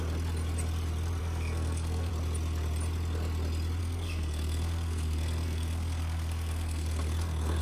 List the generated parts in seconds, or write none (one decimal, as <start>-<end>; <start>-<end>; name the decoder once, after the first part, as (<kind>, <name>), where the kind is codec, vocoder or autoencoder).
1.2-2.1 (codec, SNAC); 3.8-7.6